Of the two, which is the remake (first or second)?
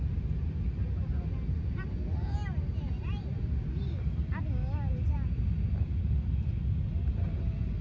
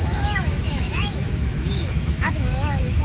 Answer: second